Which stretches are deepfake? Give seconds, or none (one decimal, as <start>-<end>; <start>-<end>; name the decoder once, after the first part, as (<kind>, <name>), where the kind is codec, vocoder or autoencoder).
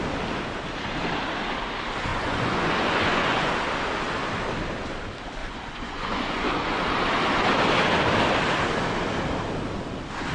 2.1-3.5 (vocoder, Vocos); 5.4-6.8